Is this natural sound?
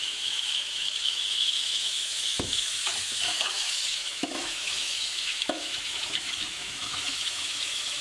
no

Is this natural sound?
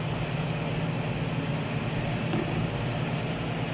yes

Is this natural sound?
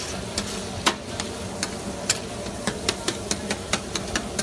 yes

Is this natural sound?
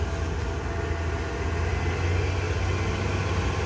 yes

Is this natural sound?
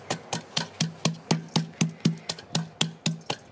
yes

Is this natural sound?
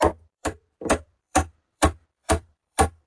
no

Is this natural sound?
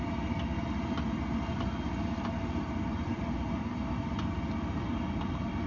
yes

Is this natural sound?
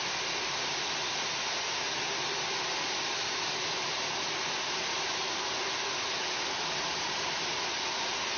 yes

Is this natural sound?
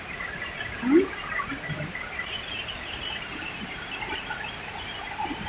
no